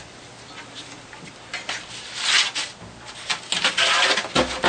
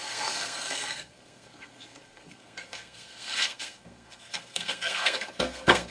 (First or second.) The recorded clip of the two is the first